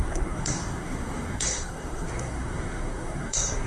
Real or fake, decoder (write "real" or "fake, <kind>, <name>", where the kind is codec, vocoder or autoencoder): fake, codec, SNAC